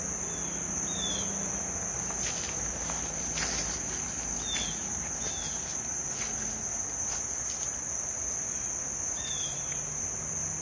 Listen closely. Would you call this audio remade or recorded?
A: recorded